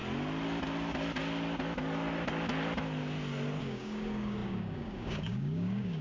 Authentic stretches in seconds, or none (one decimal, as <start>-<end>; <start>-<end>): 0.0-3.6